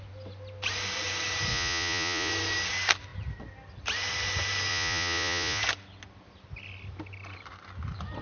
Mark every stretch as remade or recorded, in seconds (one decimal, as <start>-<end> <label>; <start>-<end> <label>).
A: 0.0-1.5 recorded; 1.5-2.3 remade; 2.3-4.7 recorded; 4.7-5.6 remade; 5.6-8.2 recorded